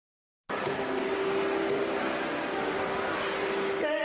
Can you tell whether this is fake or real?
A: real